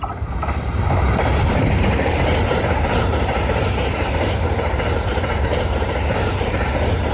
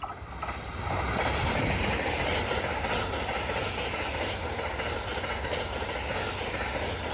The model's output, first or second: first